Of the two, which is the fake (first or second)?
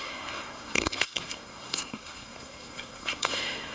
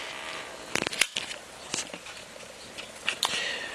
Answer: first